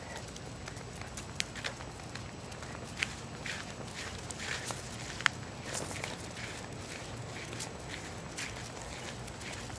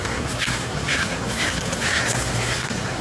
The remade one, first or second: second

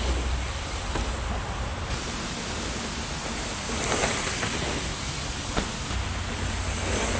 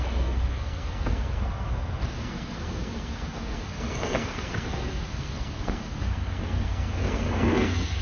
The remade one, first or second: second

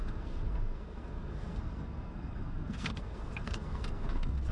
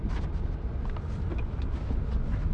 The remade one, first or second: first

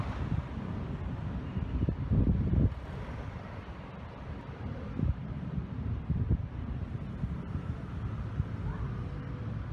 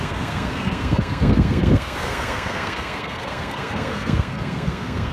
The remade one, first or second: second